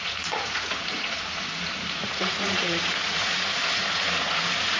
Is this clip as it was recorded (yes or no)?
no